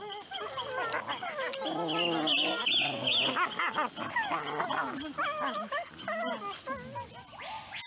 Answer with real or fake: real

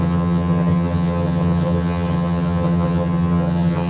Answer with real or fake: fake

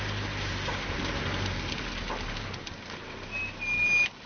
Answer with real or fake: real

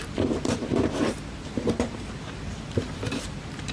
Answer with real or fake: fake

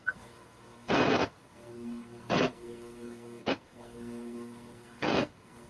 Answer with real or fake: fake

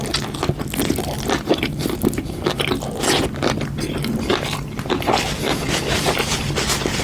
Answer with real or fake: real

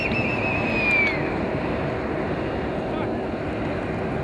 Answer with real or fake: real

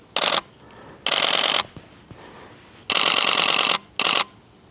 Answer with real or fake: real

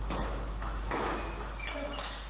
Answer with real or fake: fake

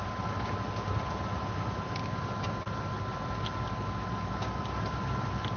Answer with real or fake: real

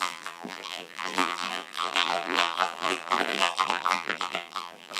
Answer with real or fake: fake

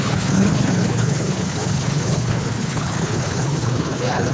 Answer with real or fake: fake